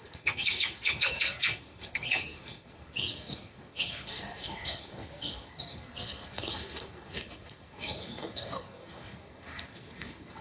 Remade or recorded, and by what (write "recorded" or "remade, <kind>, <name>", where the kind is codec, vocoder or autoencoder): remade, codec, SNAC